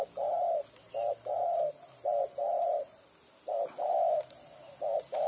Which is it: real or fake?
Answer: real